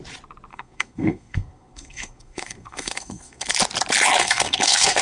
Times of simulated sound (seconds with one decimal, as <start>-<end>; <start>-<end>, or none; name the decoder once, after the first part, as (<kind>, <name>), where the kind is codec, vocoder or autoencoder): 0.5-3.5 (codec, SNAC); 4.2-5.0